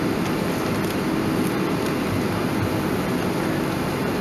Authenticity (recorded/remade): recorded